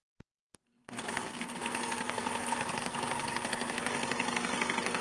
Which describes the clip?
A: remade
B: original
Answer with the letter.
A